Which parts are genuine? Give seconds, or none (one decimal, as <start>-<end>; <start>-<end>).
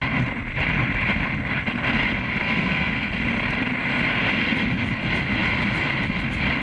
0.0-2.4; 3.1-6.6